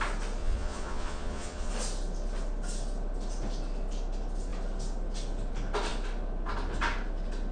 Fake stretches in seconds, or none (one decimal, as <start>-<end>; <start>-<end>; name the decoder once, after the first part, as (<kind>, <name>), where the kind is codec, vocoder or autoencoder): 0.4-1.7 (vocoder, Vocos)